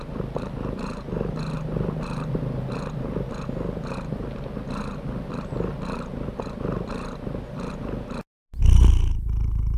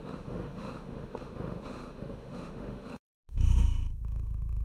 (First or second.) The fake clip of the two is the second